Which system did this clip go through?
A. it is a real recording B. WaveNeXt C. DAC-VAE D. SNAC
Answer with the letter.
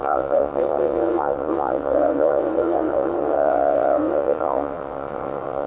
B